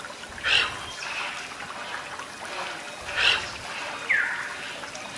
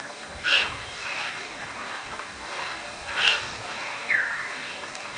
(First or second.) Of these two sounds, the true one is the first